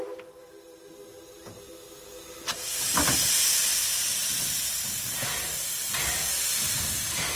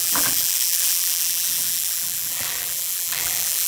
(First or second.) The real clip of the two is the first